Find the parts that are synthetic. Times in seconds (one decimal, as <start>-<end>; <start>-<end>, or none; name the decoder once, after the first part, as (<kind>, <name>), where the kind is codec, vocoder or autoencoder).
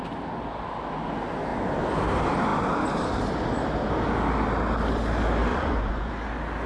5.5-6.1 (vocoder, Vocos)